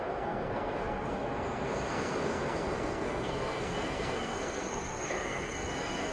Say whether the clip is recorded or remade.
remade